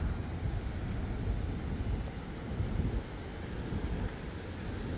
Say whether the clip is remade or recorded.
recorded